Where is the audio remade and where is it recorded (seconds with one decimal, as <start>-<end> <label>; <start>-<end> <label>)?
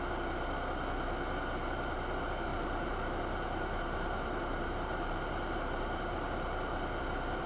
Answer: 0.0-2.5 recorded; 2.5-7.0 remade; 7.0-7.5 recorded